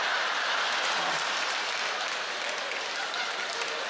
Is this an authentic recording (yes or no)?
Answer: yes